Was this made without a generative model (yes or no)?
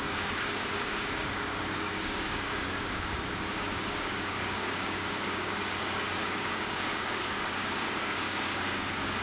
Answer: no